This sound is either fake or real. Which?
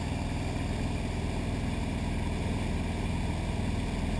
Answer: real